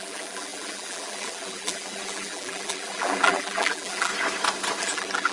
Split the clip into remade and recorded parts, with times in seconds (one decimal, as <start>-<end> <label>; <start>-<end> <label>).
0.0-4.1 remade; 4.1-4.8 recorded; 4.8-5.3 remade